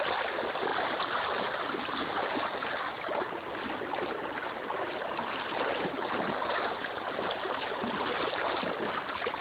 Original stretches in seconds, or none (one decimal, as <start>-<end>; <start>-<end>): 0.0-9.4